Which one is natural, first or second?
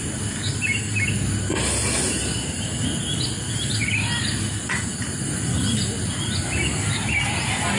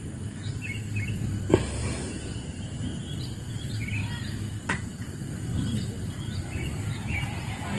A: first